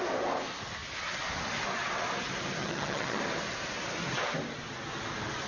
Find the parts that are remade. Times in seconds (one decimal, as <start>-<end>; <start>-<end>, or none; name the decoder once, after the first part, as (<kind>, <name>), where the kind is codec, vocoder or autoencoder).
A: 2.6-3.2 (vocoder, HiFi-GAN)